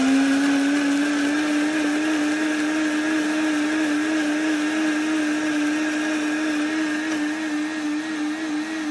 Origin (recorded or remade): recorded